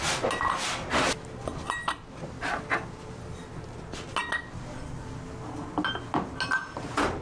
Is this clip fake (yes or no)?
no